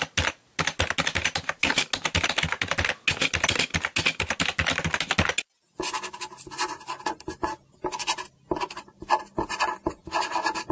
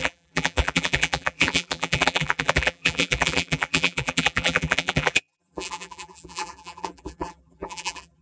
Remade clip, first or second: second